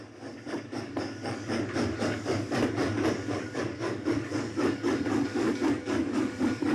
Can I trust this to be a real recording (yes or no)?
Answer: no